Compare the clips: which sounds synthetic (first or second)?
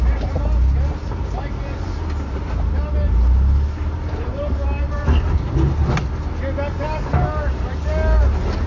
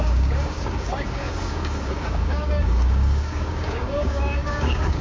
second